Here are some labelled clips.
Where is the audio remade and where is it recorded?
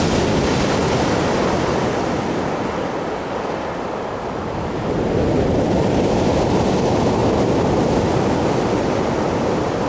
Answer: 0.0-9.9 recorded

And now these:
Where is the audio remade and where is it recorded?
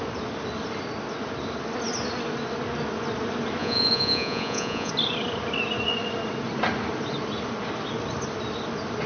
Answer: 0.0-3.6 recorded; 3.6-4.9 remade; 4.9-9.1 recorded